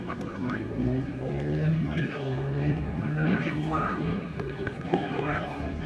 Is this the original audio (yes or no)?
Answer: no